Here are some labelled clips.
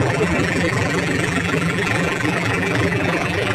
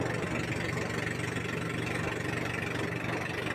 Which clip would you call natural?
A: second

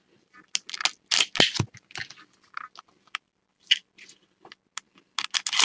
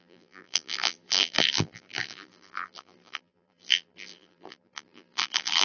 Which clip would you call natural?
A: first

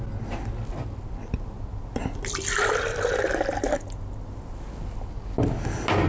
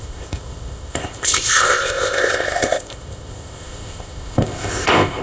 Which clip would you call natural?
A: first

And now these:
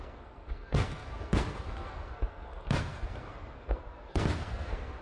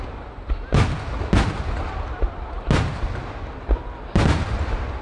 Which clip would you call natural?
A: second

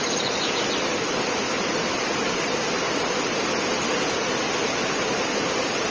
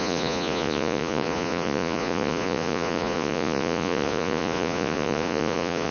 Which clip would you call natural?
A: first